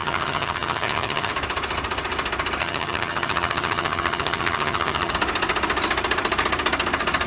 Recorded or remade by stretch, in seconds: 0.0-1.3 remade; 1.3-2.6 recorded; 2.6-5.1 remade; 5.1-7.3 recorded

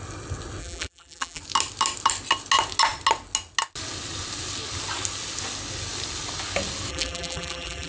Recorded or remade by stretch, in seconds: 0.0-0.6 recorded; 0.6-1.4 remade; 1.4-6.9 recorded; 6.9-7.9 remade

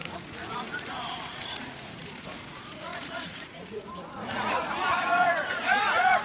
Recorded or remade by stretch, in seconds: 0.0-6.2 remade

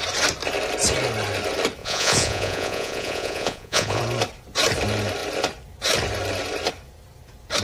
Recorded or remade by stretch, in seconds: 0.0-1.8 recorded; 1.8-4.0 remade; 4.0-7.6 recorded

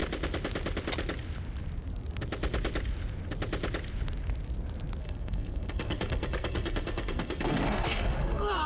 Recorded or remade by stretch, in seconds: 0.0-5.0 recorded; 5.0-8.7 remade